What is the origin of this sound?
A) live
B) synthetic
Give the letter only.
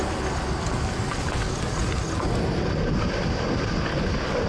A